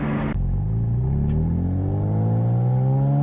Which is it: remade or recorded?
recorded